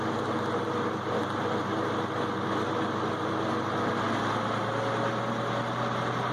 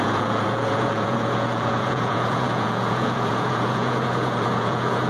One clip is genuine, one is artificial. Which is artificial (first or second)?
second